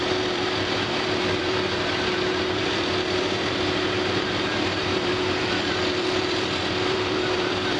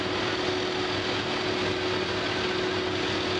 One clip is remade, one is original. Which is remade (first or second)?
first